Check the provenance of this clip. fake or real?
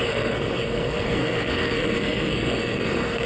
fake